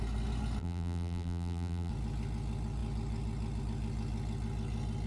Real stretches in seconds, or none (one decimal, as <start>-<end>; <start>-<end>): 0.0-0.6; 1.9-5.1

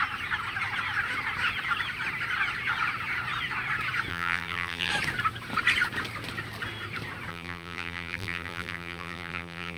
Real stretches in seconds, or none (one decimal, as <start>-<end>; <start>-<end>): 0.0-4.1; 4.9-7.3

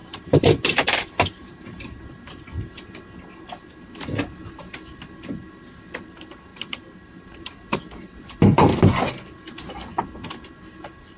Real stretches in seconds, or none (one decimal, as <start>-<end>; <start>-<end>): 2.4-6.5; 8.2-11.2

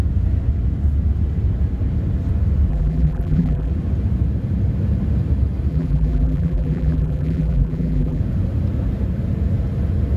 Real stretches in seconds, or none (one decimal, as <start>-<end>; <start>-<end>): 0.0-2.7; 3.7-5.7; 8.2-10.2

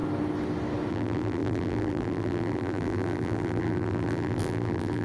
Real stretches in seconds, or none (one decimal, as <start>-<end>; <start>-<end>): 0.0-0.9

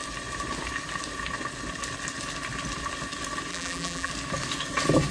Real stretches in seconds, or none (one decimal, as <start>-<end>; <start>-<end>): 0.0-3.5; 4.1-5.1

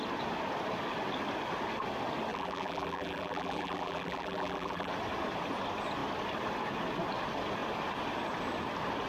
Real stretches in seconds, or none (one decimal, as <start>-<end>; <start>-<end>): 0.0-2.3; 4.9-9.1